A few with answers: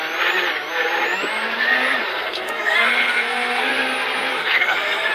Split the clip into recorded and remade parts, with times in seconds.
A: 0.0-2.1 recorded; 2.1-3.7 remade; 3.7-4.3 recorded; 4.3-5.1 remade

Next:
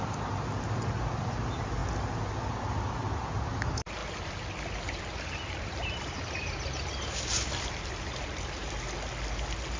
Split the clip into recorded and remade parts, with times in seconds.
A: 0.0-9.8 recorded

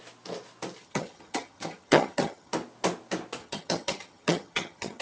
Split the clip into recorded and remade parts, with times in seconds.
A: 0.0-0.8 recorded; 0.8-2.5 remade; 2.5-3.4 recorded; 3.4-5.0 remade

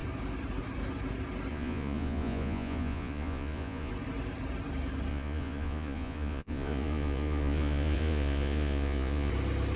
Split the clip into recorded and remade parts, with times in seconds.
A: 0.0-1.5 recorded; 1.5-3.9 remade; 3.9-5.1 recorded; 5.1-9.3 remade; 9.3-9.8 recorded

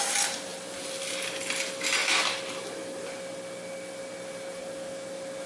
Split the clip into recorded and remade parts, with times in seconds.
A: 0.0-0.5 recorded; 0.5-1.1 remade; 1.1-5.5 recorded

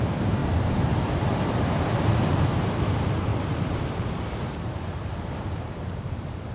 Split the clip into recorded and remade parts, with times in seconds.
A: 0.0-0.4 recorded; 0.4-2.1 remade; 2.1-3.3 recorded; 3.3-6.5 remade